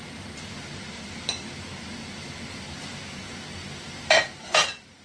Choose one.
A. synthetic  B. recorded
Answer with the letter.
B